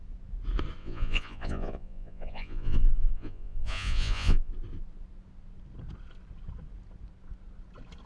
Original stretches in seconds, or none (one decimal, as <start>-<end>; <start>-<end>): 0.0-0.8; 4.5-8.1